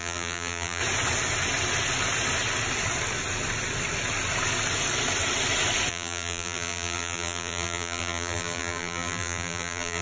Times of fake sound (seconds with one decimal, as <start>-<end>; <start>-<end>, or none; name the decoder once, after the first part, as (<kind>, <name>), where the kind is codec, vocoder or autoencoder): 0.0-0.8 (vocoder, BigVGAN v2); 5.9-10.0